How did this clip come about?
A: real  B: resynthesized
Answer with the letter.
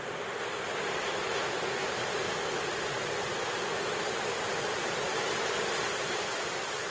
A